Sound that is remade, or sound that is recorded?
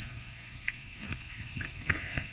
remade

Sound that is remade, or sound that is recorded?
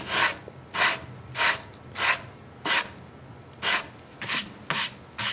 recorded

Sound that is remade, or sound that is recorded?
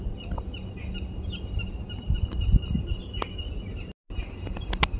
recorded